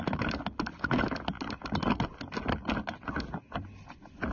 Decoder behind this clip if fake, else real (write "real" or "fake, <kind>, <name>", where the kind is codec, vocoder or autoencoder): real